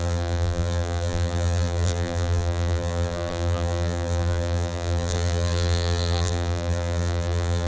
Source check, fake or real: fake